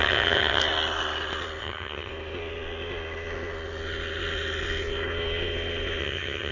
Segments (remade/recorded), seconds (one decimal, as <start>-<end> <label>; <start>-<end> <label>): 0.0-0.6 remade; 0.6-1.6 recorded; 1.6-2.1 remade; 2.1-6.0 recorded; 6.0-6.5 remade